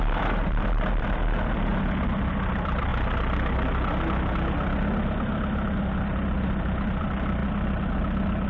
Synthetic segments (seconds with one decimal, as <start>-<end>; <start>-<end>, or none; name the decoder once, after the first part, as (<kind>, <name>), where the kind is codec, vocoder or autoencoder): 0.0-1.7 (vocoder, BigVGAN v2); 2.3-2.9; 7.0-7.4